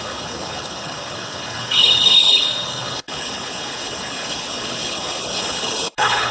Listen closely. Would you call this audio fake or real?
fake